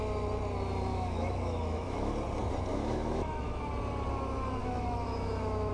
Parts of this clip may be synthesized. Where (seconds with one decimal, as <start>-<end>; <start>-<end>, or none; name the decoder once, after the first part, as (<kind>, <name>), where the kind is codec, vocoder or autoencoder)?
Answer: 0.9-2.1 (autoencoder, DAC-VAE); 2.7-3.6; 4.6-5.7